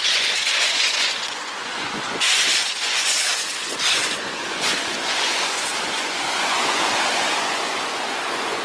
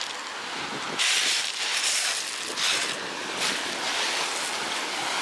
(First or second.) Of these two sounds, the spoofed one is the first